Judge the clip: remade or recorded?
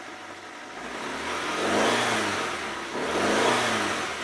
recorded